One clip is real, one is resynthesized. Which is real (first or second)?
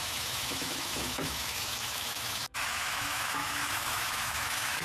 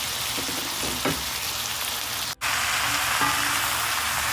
second